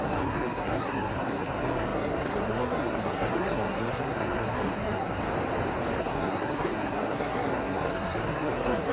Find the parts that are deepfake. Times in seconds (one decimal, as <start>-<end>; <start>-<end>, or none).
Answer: 0.0-5.2; 6.0-8.9